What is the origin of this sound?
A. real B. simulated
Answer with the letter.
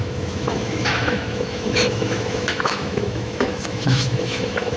B